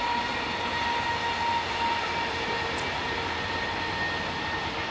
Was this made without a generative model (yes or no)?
yes